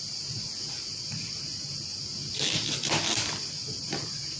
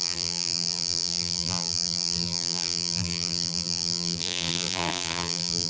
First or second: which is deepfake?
second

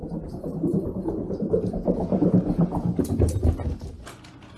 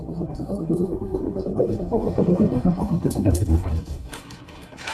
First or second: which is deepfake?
second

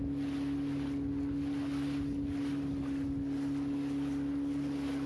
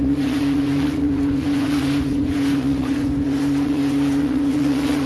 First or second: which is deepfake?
second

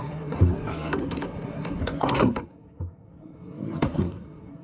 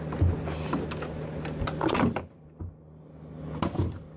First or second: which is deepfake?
first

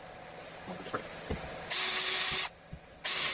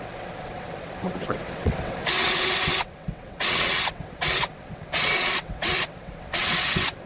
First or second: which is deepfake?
second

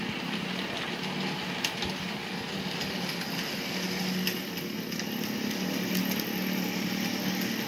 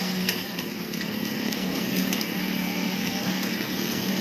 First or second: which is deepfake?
second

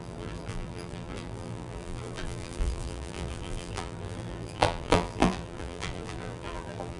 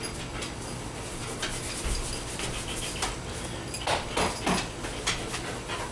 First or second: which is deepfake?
first